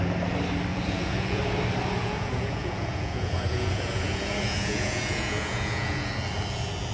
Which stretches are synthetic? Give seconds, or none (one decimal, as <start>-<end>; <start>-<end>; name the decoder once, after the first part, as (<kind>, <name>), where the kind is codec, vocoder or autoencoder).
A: 0.7-1.4 (vocoder, Vocos); 2.0-6.1